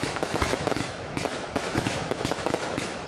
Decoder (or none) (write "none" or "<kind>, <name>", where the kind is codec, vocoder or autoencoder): autoencoder, DAC-VAE